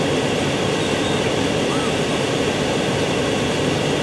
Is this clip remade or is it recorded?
remade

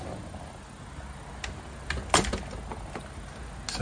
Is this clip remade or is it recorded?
recorded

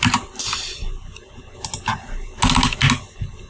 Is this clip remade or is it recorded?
recorded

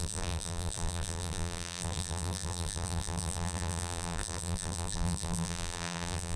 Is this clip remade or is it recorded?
remade